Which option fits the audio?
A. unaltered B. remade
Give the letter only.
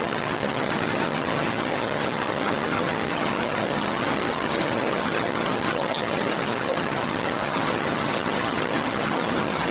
B